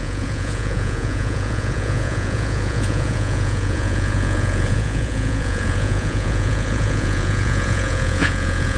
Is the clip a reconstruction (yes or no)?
yes